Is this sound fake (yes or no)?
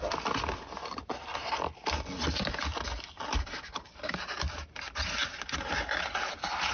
no